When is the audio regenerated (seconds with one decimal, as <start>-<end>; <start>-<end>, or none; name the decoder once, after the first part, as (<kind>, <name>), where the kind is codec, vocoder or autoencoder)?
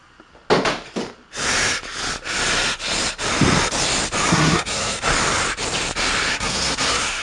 4.3-5.1 (codec, SNAC); 6.3-7.2